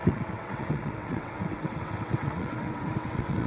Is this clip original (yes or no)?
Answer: no